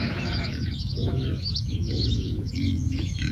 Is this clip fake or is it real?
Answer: fake